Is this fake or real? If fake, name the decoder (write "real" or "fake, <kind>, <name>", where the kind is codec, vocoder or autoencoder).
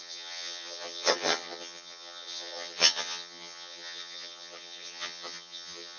fake, vocoder, HiFi-GAN